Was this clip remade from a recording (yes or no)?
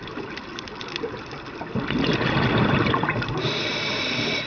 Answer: no